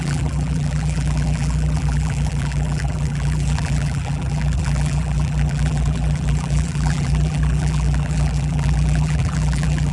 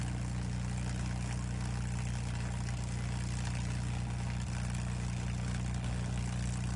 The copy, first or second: first